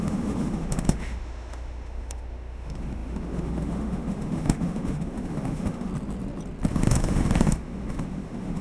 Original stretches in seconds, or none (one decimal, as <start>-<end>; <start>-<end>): 5.9-6.7